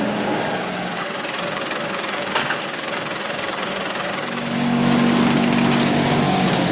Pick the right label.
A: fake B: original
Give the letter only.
A